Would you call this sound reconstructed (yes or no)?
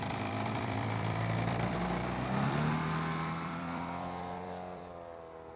yes